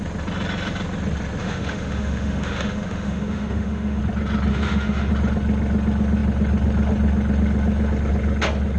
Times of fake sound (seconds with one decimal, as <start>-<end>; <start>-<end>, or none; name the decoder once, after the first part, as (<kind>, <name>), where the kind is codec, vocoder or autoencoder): 1.4-4.0 (autoencoder, DAC-VAE); 4.5-5.1